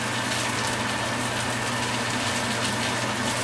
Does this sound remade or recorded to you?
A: recorded